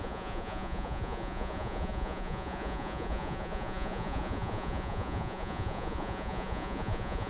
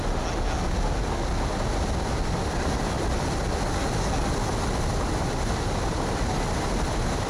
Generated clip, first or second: first